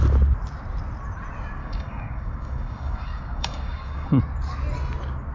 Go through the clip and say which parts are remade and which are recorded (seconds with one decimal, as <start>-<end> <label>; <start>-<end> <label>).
0.0-1.6 recorded; 1.6-4.2 remade; 4.2-5.3 recorded